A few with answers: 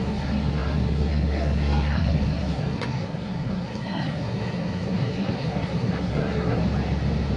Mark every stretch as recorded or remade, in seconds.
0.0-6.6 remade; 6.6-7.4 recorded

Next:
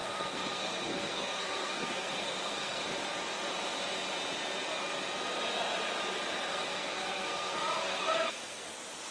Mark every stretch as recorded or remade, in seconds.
0.0-2.8 remade; 2.8-6.5 recorded; 6.5-8.7 remade; 8.7-9.1 recorded

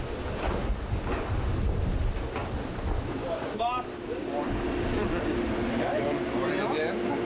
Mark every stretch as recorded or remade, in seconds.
0.0-7.2 recorded

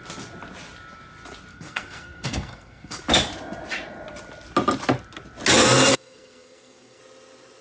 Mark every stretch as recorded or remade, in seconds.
0.0-1.5 recorded; 1.5-3.0 remade; 3.0-5.9 recorded; 5.9-7.0 remade; 7.0-7.6 recorded

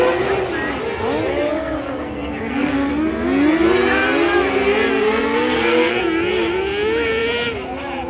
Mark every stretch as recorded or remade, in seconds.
0.0-1.5 recorded; 1.5-2.9 remade; 2.9-4.9 recorded; 4.9-6.0 remade; 6.0-8.1 recorded

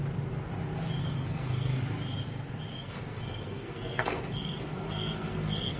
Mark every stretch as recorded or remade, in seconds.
0.0-1.0 recorded; 1.0-1.8 remade; 1.8-2.8 recorded; 2.8-5.8 remade

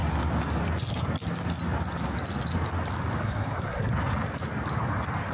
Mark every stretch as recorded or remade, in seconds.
0.0-3.2 recorded; 3.2-3.9 remade; 3.9-5.3 recorded

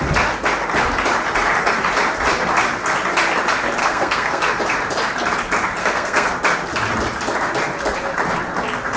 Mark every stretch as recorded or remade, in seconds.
0.0-3.8 recorded; 3.8-4.6 remade; 4.6-5.8 recorded; 5.8-6.3 remade; 6.3-9.0 recorded